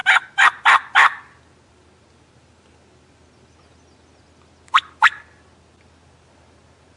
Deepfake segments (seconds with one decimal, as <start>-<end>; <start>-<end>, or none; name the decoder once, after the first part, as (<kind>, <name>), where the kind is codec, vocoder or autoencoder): none